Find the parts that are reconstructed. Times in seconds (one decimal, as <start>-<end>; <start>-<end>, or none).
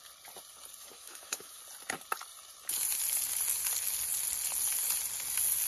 0.8-1.6